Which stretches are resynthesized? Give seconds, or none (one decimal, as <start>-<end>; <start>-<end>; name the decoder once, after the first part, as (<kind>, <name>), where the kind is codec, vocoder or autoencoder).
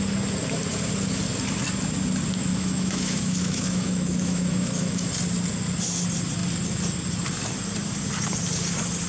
2.5-5.1 (autoencoder, DAC-VAE)